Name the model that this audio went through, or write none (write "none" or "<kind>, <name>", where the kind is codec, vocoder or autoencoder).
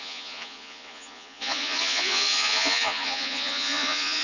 vocoder, Vocos